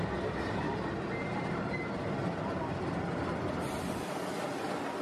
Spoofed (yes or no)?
no